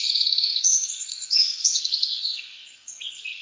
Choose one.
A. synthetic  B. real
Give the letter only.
A